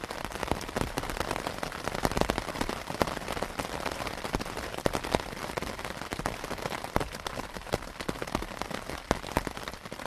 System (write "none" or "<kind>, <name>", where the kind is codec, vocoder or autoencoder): vocoder, BigVGAN v2